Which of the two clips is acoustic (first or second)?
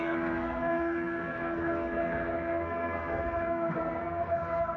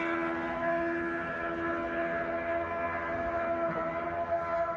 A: second